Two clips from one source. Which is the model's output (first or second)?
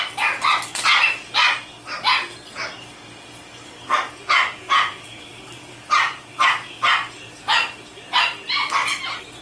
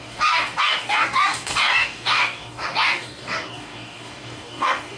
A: second